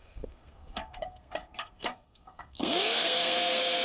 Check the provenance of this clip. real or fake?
fake